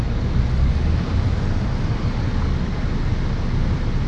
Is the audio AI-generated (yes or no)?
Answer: no